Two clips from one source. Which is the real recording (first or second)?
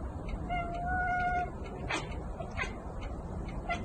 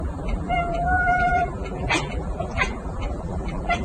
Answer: first